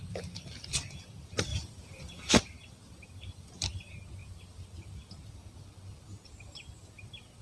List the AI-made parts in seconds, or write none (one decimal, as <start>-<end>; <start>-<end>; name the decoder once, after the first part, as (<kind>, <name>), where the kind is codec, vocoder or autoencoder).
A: 1.5-2.3 (vocoder, BigVGAN v2); 4.2-5.3